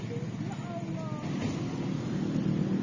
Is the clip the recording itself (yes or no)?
yes